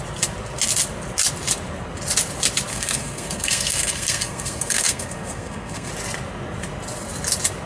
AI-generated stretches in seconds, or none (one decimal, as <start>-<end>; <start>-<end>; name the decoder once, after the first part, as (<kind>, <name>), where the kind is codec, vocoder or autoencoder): 2.7-5.9 (codec, SNAC)